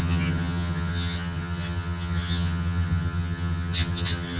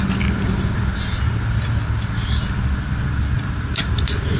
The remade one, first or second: first